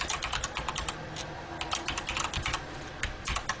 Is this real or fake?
real